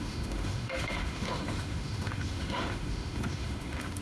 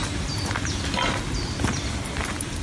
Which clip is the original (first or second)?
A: second